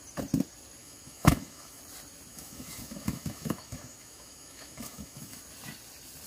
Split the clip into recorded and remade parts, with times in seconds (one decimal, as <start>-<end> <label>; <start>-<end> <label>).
0.0-0.8 recorded; 0.8-1.8 remade; 1.8-2.3 recorded; 2.3-5.4 remade; 5.4-6.3 recorded